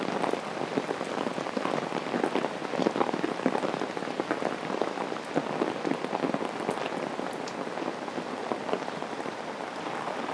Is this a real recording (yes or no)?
yes